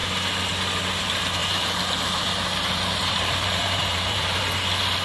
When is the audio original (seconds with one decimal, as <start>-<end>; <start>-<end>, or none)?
0.0-1.4; 4.4-5.0